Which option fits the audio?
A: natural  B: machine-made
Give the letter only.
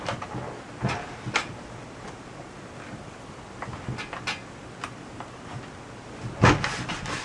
A